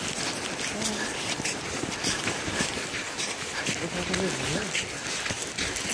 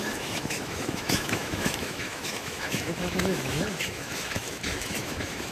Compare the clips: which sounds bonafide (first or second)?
first